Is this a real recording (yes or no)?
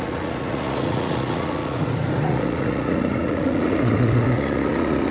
no